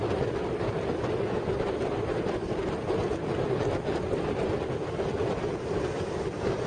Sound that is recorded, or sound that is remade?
recorded